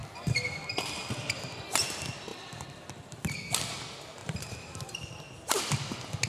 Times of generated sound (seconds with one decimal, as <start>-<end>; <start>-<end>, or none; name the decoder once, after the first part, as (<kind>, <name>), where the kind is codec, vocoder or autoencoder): 0.0-0.6 (vocoder, BigVGAN v2); 4.2-5.3